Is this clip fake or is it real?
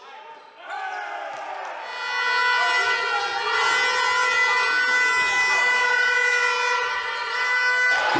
real